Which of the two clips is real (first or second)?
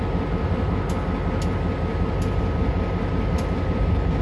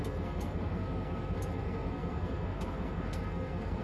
first